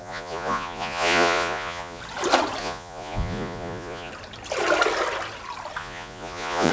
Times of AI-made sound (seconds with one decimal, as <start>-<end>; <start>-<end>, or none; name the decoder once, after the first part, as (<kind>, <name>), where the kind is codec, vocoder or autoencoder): 0.0-2.0 (vocoder, Vocos); 2.6-4.1; 5.8-6.7